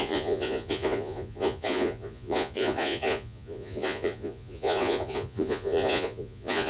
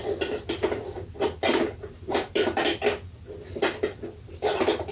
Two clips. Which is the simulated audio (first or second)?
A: first